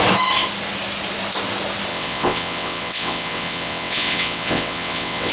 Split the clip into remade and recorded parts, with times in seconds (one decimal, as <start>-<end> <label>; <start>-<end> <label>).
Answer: 0.0-1.9 recorded; 1.9-5.3 remade